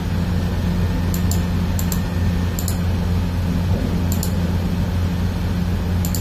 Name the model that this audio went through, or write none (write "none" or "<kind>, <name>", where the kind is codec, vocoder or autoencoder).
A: none